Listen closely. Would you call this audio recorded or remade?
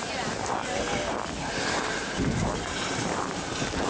recorded